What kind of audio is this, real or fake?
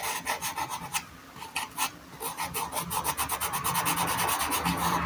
real